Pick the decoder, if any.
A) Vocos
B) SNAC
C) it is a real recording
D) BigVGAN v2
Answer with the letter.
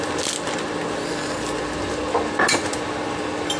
C